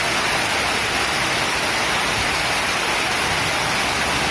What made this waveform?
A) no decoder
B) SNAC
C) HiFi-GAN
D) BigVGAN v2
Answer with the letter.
A